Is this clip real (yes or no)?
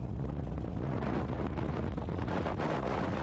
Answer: no